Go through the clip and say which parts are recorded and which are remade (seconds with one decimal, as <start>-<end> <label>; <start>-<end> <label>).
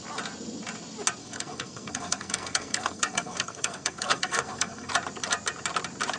0.0-1.2 recorded; 1.2-4.9 remade; 4.9-6.2 recorded